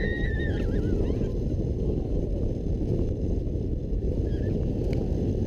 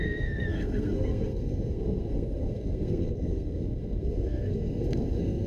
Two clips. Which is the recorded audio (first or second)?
first